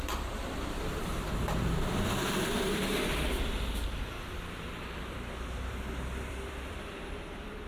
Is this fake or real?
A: fake